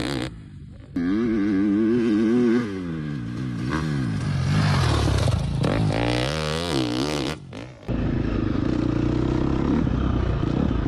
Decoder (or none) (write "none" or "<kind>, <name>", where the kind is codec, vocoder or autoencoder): none